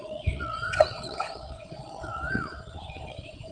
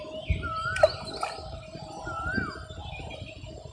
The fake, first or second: first